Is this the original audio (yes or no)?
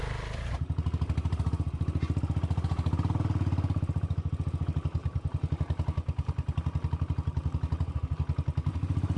yes